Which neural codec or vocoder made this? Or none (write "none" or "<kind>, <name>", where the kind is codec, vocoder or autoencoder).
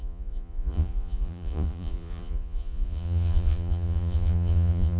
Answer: vocoder, Vocos